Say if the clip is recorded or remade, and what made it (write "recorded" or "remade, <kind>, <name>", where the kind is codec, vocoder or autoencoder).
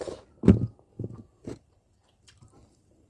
recorded